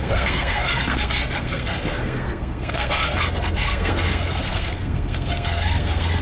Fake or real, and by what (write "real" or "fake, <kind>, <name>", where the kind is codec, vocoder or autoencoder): fake, codec, SNAC